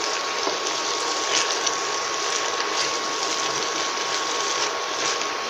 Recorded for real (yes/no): yes